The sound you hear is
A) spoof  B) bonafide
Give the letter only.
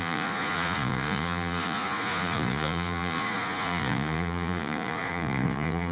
A